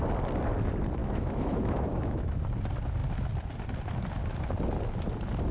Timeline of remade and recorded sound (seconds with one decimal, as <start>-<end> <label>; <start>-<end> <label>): 0.0-1.0 recorded; 1.0-2.4 remade; 2.4-5.5 recorded

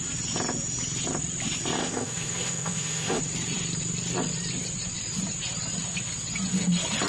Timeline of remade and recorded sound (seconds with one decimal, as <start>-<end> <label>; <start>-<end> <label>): 0.0-1.8 recorded; 1.8-3.2 remade; 3.2-7.1 recorded

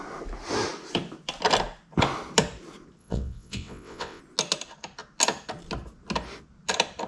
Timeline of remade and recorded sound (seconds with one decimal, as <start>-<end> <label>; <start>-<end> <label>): 0.0-3.0 recorded; 3.0-4.2 remade; 4.2-7.1 recorded

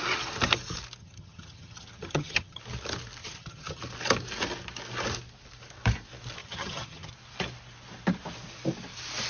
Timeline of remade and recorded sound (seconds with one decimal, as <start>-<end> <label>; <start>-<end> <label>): 0.0-1.0 recorded; 1.0-2.6 remade; 2.6-3.2 recorded; 3.2-3.8 remade; 3.8-6.4 recorded; 6.4-7.1 remade; 7.1-9.3 recorded

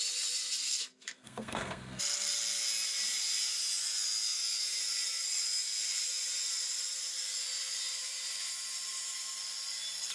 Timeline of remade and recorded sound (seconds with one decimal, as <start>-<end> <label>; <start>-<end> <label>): 0.0-0.6 recorded; 0.6-2.0 remade; 2.0-10.1 recorded

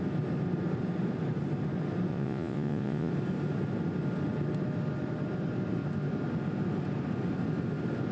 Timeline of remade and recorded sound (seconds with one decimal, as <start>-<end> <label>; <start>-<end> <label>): 0.0-2.1 recorded; 2.1-3.1 remade; 3.1-8.1 recorded

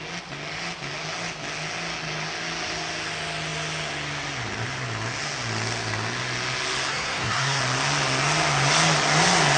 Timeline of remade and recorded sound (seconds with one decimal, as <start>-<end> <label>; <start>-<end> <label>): 0.0-6.9 recorded; 6.9-7.6 remade; 7.6-9.6 recorded